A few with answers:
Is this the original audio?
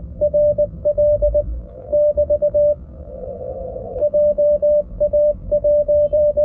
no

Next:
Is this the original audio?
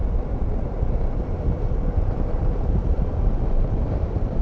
no